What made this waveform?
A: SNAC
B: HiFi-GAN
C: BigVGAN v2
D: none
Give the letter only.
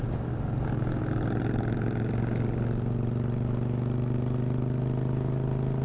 D